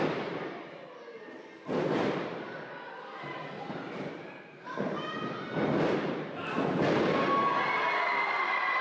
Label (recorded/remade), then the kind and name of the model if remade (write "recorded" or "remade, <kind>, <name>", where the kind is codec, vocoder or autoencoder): recorded